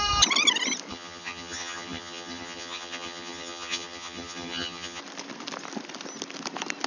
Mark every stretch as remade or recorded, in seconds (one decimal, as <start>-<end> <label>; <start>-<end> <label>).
0.0-0.9 recorded; 0.9-5.0 remade; 5.0-6.9 recorded